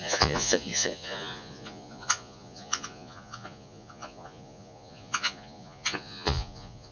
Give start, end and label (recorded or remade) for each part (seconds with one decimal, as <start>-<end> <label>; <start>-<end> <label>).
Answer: 0.0-6.9 remade